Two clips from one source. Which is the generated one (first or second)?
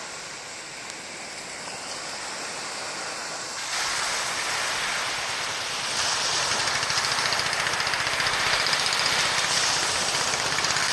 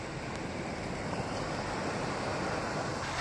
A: second